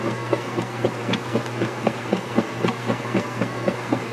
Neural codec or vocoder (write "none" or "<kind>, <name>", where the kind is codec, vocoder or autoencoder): codec, SNAC